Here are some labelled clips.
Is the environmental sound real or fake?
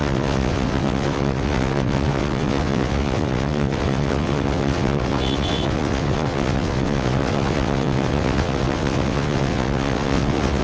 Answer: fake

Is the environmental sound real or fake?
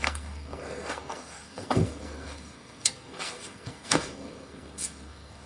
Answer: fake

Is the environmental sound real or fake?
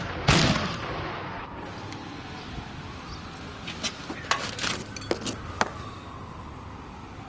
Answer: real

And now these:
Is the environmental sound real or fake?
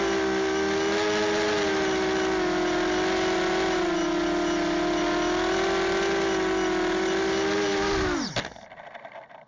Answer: real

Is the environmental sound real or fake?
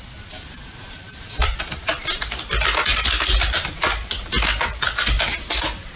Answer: real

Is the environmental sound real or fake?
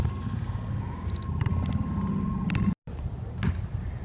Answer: real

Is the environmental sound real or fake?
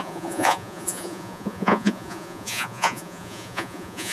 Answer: fake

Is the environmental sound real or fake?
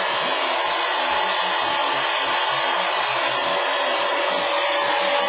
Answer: real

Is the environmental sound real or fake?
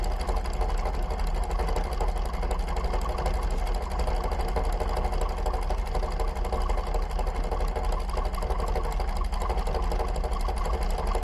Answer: real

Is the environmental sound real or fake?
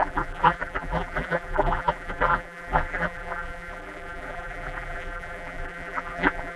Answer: fake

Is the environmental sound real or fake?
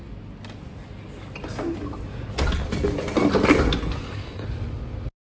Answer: real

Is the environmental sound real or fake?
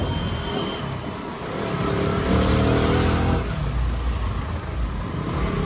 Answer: real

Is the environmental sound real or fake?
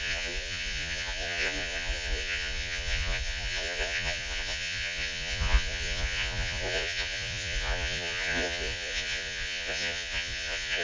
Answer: fake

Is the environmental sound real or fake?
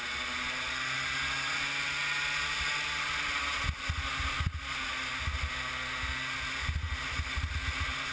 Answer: real